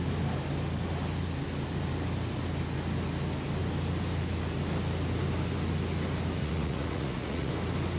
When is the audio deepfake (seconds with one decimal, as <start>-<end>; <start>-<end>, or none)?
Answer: 6.4-7.5

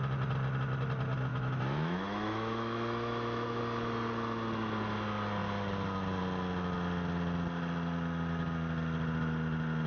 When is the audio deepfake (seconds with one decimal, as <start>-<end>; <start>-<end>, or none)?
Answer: 1.3-3.6

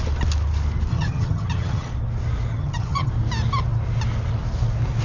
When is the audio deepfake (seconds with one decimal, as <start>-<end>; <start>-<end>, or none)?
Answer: 0.9-1.9; 2.5-3.1

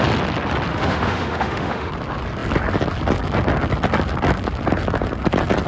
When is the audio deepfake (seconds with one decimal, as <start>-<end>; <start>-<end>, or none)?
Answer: 0.7-1.9

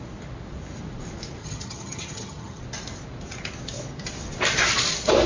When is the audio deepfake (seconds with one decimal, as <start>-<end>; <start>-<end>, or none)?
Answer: 1.4-2.6

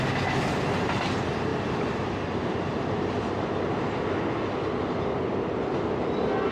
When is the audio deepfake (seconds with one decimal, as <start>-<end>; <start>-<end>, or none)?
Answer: 1.5-3.3

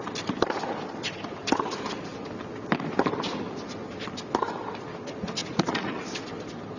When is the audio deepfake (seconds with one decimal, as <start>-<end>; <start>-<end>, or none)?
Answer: 5.4-6.0